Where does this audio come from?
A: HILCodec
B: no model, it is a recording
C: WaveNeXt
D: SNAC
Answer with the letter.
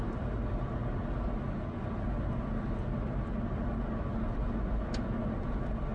B